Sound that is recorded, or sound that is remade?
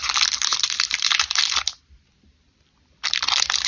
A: remade